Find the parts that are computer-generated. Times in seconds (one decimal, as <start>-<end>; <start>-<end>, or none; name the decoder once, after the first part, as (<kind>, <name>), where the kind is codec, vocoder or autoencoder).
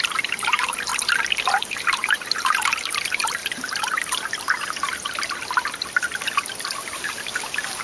0.0-0.9 (vocoder, BigVGAN v2); 1.5-3.4